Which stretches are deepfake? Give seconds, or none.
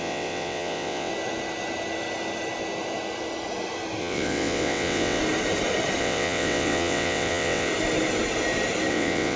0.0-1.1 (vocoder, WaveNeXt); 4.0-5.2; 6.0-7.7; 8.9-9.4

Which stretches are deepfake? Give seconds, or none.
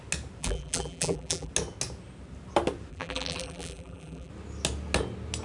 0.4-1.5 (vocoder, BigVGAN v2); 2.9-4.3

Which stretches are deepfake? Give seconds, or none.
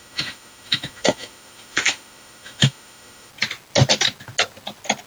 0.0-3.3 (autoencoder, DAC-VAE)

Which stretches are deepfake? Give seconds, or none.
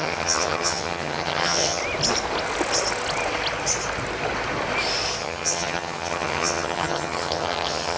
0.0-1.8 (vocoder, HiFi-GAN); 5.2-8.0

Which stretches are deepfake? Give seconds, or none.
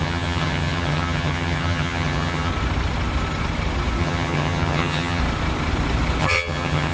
0.0-2.5 (vocoder, HiFi-GAN); 4.0-5.2; 6.2-6.9